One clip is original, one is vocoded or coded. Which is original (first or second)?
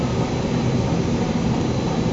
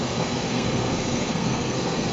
first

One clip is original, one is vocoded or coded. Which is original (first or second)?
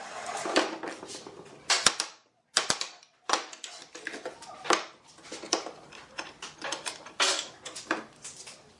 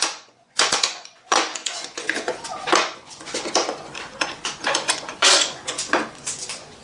first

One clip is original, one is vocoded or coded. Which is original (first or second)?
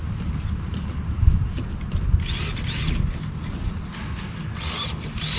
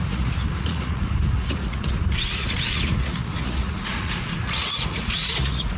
first